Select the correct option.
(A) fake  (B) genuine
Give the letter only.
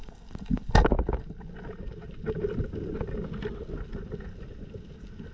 B